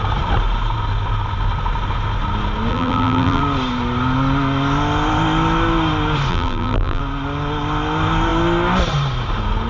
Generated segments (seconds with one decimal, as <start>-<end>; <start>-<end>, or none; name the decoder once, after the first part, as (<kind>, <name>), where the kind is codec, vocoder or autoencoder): 2.7-3.4 (vocoder, BigVGAN v2); 6.3-7.0